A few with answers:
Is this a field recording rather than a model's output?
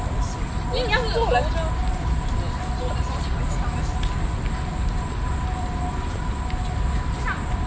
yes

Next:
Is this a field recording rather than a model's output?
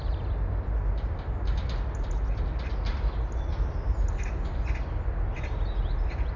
yes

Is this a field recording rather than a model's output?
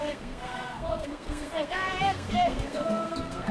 no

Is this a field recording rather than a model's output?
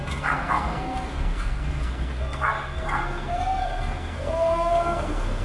no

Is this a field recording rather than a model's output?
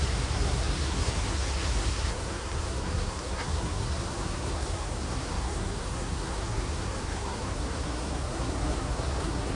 no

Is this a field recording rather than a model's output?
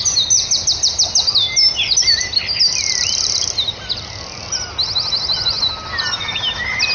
yes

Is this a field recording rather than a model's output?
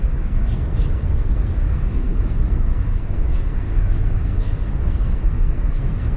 no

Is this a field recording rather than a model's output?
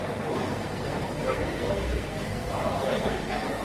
no